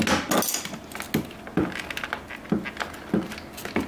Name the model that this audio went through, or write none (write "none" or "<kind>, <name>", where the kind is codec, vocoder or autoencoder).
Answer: none